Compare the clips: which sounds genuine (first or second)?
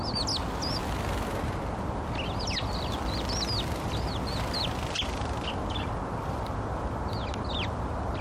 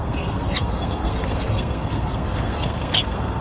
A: first